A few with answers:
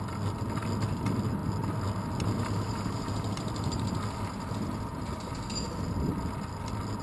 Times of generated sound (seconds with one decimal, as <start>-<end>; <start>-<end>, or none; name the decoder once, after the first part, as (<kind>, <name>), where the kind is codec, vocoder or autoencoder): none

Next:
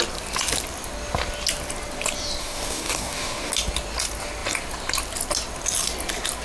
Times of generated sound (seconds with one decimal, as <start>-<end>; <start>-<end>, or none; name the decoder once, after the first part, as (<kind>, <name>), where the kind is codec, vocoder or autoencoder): 2.4-3.5 (codec, DAC)

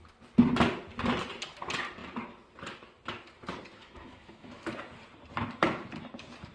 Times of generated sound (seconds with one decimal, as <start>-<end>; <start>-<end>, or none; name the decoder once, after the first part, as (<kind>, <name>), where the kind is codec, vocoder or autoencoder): 3.8-4.7 (autoencoder, DAC-VAE)

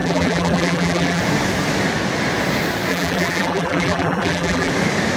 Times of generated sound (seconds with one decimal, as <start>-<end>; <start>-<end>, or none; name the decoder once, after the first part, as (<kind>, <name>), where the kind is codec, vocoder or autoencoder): 0.0-1.2 (vocoder, BigVGAN v2); 2.9-4.7